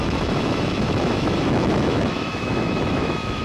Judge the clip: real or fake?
fake